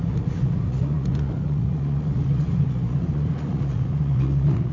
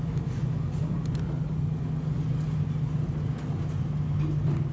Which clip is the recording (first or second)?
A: second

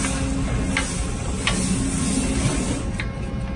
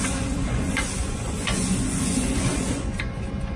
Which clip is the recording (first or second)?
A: first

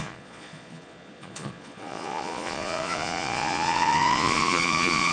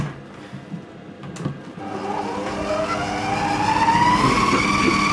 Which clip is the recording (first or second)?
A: second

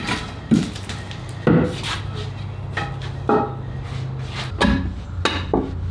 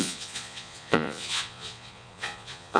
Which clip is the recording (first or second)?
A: first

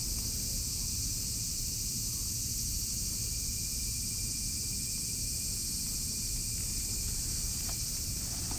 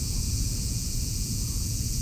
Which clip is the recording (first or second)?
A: first